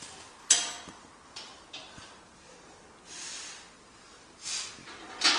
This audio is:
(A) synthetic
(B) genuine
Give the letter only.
B